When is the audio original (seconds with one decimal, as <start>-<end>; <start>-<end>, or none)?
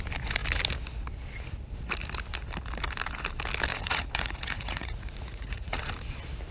0.0-3.7; 5.8-6.5